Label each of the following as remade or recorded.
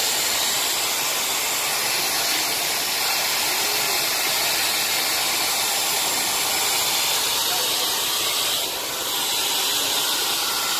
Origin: recorded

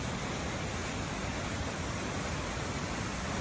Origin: recorded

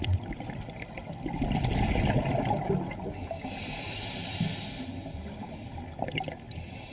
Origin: recorded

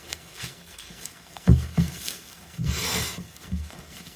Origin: remade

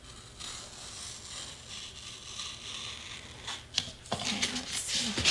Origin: recorded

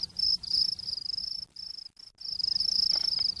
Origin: recorded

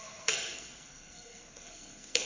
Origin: remade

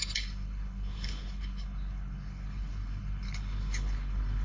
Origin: remade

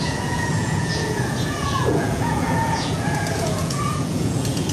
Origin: remade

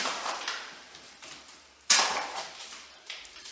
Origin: remade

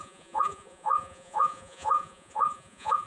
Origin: remade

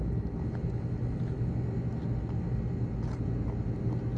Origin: recorded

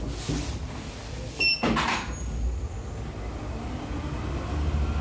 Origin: recorded